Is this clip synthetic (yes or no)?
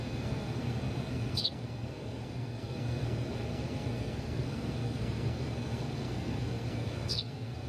yes